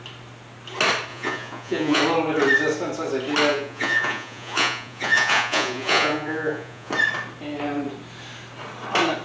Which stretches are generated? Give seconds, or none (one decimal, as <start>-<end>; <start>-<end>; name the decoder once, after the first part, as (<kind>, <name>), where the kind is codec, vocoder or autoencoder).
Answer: 1.1-2.0 (vocoder, Vocos); 3.5-6.9

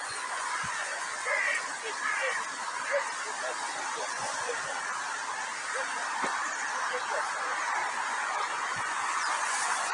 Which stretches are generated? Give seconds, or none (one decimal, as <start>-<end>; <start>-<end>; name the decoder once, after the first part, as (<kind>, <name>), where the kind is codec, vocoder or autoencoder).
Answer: 0.0-1.7 (vocoder, Vocos); 4.1-4.5; 7.9-9.9

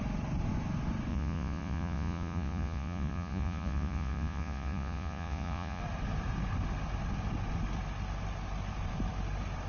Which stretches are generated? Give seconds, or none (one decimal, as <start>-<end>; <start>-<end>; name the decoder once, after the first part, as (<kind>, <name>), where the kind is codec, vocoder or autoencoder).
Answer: 1.1-5.8 (vocoder, Vocos)

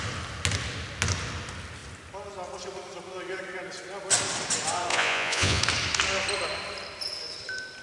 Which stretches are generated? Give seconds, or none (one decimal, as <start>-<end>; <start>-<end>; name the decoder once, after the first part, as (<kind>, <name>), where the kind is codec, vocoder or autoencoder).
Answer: 4.9-5.6 (vocoder, Vocos)

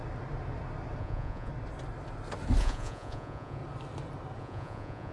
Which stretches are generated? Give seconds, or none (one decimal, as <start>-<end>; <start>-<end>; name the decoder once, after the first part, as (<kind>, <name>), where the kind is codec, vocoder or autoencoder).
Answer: 1.0-1.5 (vocoder, Vocos); 2.6-3.6; 4.4-5.1

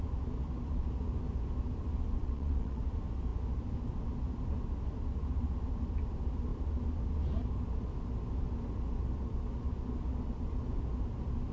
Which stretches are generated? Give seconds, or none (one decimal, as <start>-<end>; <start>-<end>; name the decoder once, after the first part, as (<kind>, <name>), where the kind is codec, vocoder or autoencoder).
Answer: 2.2-2.8 (vocoder, Vocos)

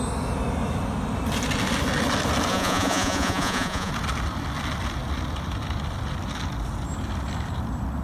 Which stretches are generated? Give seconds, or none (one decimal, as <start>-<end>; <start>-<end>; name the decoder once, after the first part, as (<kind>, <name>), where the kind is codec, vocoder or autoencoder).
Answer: 2.5-3.9 (vocoder, Vocos)

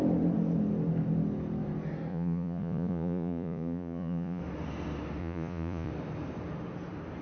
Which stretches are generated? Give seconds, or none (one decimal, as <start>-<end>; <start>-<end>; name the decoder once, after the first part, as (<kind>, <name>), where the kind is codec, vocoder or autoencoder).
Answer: 2.1-4.4 (vocoder, Vocos); 5.2-5.9